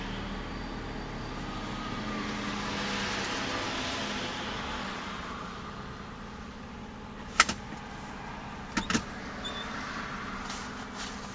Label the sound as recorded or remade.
recorded